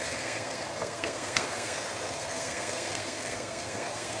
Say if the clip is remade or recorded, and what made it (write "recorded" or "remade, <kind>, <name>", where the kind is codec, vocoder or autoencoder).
remade, codec, SNAC